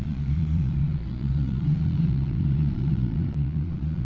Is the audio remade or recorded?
remade